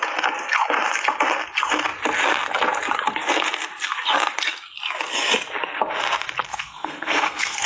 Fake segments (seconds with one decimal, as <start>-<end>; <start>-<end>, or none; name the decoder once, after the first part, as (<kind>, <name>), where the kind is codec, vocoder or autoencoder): 6.5-7.7 (codec, SNAC)